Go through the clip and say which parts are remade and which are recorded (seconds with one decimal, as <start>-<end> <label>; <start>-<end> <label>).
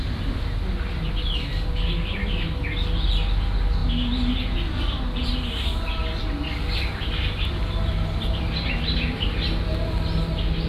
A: 0.0-10.7 recorded